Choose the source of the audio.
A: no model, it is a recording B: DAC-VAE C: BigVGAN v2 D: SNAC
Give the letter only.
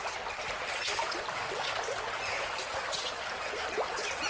A